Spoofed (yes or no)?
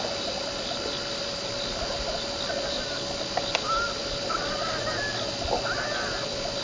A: no